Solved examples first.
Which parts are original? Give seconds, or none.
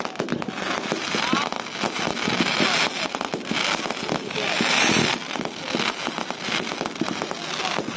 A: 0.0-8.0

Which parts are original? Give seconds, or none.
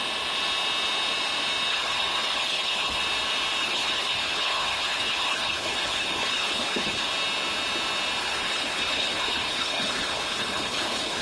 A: 0.0-1.7; 3.0-3.6; 7.0-8.2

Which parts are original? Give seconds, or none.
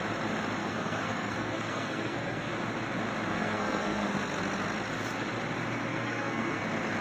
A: 0.0-0.6; 2.5-3.3; 4.4-5.9; 6.6-7.0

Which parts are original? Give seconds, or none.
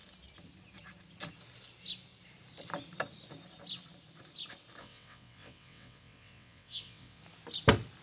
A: 0.0-4.8; 7.2-8.0